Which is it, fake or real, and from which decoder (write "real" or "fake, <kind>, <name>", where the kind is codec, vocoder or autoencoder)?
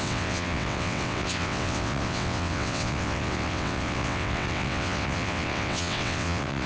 fake, vocoder, WaveNeXt